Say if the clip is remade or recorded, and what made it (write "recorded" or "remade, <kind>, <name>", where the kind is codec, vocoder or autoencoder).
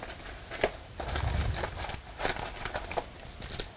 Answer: recorded